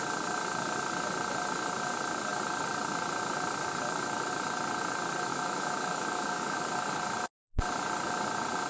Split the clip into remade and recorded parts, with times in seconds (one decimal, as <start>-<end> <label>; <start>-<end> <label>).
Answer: 0.0-5.3 recorded; 5.3-6.6 remade; 6.6-8.7 recorded